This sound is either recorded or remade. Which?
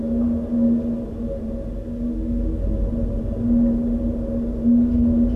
recorded